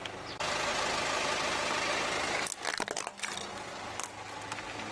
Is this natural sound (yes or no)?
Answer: yes